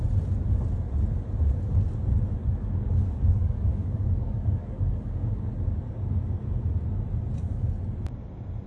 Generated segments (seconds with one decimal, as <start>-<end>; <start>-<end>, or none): 2.4-5.5